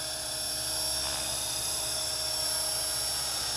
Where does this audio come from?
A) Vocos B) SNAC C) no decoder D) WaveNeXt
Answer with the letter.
C